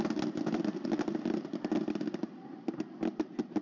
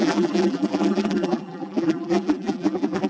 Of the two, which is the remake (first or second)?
second